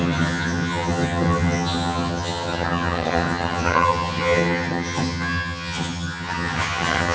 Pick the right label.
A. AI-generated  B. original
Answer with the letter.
A